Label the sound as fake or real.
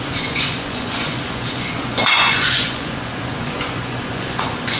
fake